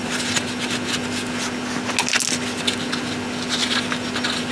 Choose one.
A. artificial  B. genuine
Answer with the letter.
B